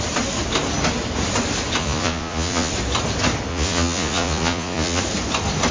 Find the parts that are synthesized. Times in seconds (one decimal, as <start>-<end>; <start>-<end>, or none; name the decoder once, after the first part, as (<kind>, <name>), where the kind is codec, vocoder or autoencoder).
1.8-2.7 (vocoder, Vocos); 3.5-5.0